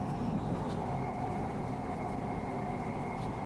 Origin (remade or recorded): recorded